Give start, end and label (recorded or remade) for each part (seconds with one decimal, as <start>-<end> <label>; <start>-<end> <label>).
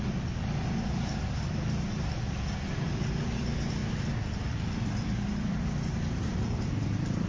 0.0-7.3 recorded